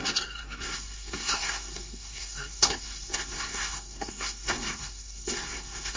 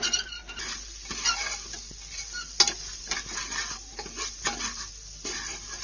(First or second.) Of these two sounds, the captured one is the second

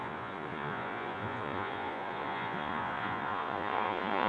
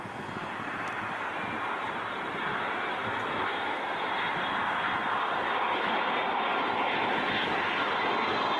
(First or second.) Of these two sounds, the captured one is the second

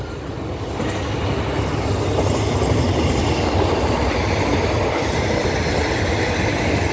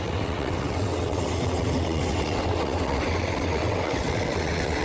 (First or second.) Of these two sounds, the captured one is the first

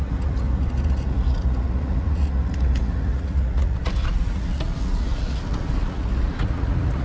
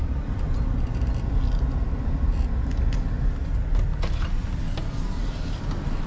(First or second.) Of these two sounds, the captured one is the second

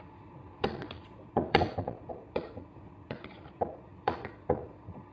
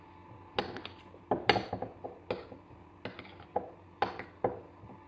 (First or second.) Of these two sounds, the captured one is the second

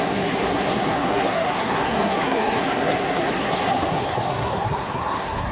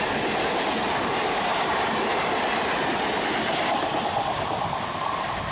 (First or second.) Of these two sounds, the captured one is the second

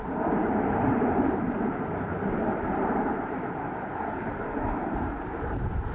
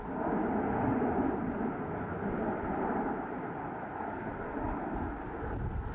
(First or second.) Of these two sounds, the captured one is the second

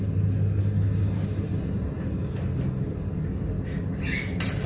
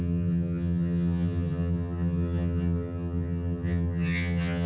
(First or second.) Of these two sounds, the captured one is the first